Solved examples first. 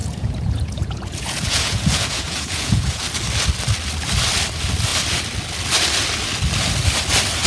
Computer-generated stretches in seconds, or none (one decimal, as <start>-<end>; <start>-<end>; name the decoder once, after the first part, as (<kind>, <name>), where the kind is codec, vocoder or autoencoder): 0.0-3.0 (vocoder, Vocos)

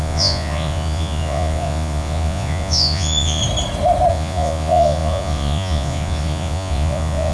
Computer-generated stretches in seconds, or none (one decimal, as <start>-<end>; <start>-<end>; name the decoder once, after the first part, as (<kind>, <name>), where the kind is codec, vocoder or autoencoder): 0.0-3.4 (vocoder, Vocos); 4.1-7.3

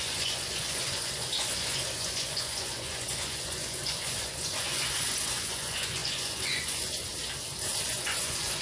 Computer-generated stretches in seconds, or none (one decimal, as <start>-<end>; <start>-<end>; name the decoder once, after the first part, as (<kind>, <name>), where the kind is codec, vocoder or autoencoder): 0.0-7.1 (vocoder, Vocos); 7.9-8.6

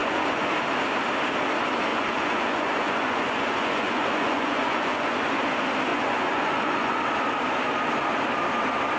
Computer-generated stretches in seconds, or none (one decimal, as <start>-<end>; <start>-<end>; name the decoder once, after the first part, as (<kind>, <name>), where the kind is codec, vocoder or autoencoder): 0.0-0.5 (vocoder, Vocos); 1.9-5.4; 5.9-7.0

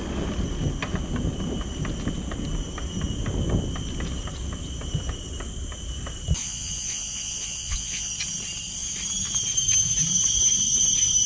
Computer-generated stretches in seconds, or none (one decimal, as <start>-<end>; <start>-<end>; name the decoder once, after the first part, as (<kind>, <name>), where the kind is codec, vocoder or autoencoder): 6.4-8.1 (vocoder, Vocos)

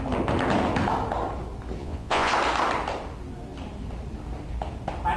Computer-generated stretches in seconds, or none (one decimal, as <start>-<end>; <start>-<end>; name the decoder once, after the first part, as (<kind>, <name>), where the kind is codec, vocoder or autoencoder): 1.8-2.3 (vocoder, Vocos)

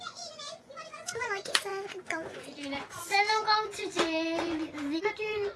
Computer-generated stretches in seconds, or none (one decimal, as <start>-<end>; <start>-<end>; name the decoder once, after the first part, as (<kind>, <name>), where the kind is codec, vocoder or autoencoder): 0.0-5.6 (vocoder, Vocos)